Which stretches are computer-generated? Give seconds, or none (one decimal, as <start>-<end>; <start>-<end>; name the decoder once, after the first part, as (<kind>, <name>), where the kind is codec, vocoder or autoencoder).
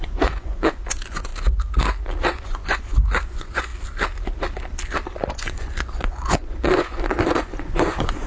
0.0-1.3 (vocoder, Vocos); 2.2-3.7; 5.3-8.3